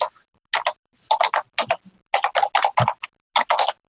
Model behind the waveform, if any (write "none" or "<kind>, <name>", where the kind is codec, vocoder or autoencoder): none